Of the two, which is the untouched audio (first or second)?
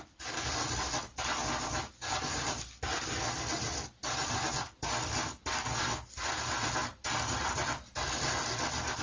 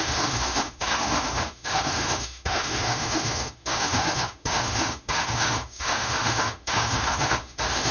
first